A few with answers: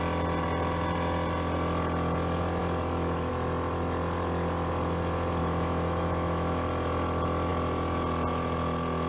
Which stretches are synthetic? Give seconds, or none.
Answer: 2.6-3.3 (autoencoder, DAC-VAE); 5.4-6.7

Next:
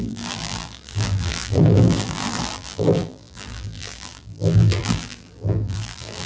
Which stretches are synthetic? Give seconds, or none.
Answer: 0.0-6.3 (vocoder, BigVGAN v2)